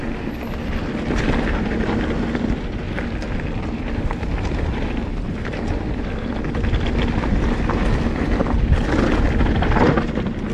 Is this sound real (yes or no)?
yes